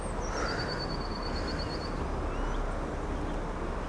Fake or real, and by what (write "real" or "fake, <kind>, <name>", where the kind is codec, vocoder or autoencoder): real